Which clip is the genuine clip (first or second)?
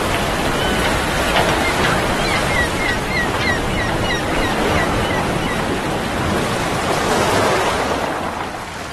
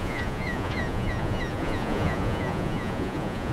first